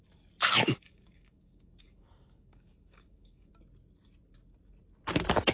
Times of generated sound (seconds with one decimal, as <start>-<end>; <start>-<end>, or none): 0.5-3.5